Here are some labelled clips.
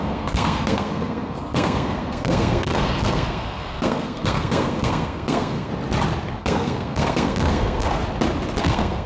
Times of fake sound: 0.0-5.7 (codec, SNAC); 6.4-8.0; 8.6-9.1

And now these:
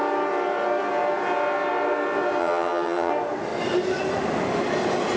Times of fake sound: 2.4-3.1 (vocoder, HiFi-GAN)

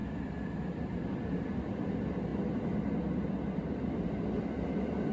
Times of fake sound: none

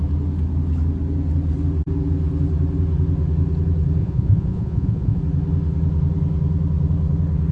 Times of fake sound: 4.0-5.2 (vocoder, Vocos)

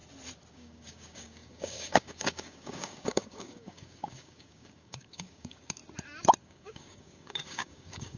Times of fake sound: 0.5-5.8 (codec, DAC); 6.4-8.2

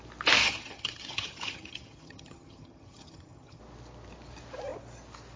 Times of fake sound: 0.4-3.6 (vocoder, HiFi-GAN)